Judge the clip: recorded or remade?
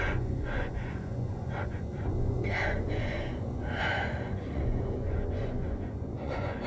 remade